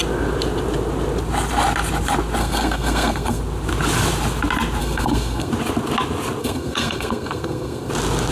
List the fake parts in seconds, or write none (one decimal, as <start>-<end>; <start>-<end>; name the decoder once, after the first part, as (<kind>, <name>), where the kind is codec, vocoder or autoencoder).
2.4-3.4 (codec, SNAC); 4.8-5.5; 6.4-7.9